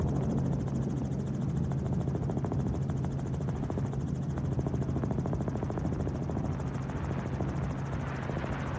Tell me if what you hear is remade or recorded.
recorded